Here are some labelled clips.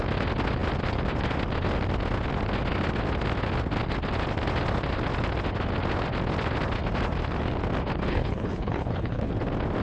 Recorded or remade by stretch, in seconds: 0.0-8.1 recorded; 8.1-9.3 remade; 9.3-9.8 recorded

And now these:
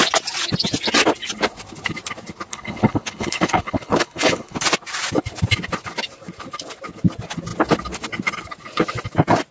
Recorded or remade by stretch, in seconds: 0.0-2.5 recorded; 2.5-4.6 remade; 4.6-9.5 recorded

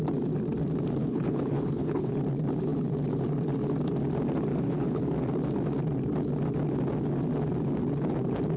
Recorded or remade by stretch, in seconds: 0.0-1.0 recorded; 1.0-2.2 remade; 2.2-4.5 recorded; 4.5-5.0 remade; 5.0-8.6 recorded